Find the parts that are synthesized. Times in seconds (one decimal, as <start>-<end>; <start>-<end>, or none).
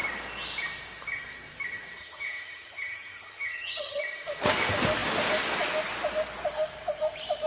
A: 2.0-4.0